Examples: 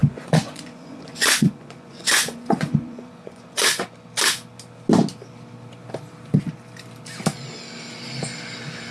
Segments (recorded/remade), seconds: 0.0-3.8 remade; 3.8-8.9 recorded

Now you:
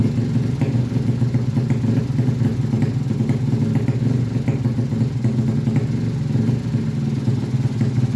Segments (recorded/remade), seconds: 0.0-8.2 recorded

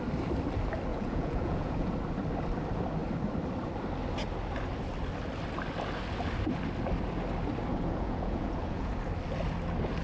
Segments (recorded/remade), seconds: 0.0-0.9 recorded; 0.9-1.9 remade; 1.9-7.7 recorded; 7.7-8.9 remade; 8.9-10.0 recorded

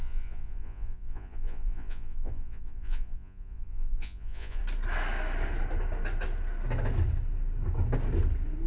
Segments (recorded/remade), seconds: 0.0-4.6 remade; 4.6-8.7 recorded